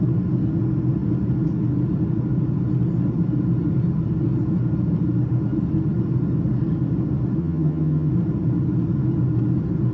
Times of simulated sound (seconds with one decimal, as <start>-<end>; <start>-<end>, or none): 7.4-8.1